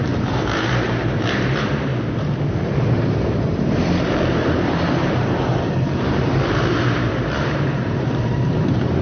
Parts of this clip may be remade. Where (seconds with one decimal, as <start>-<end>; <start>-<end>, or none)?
0.0-1.9; 2.5-9.0